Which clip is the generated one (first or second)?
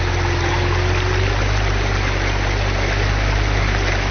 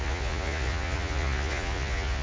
second